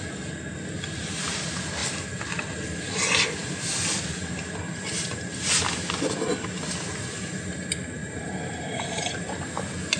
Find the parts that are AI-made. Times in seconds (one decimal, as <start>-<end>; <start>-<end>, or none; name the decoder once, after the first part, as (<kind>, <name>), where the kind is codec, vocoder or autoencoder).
8.0-9.3 (vocoder, BigVGAN v2)